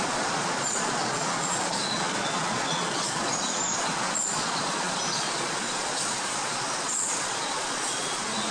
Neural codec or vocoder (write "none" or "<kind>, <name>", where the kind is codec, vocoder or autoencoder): vocoder, Vocos